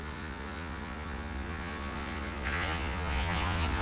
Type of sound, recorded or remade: remade